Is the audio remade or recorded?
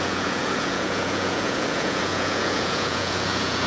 remade